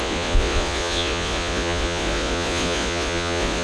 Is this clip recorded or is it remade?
remade